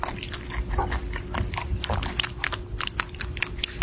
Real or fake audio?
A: real